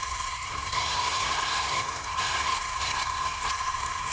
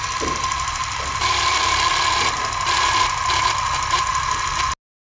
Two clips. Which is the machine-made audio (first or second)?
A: first